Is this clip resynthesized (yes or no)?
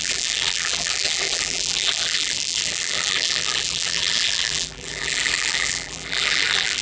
yes